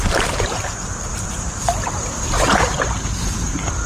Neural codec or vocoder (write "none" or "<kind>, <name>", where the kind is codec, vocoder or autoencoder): vocoder, BigVGAN v2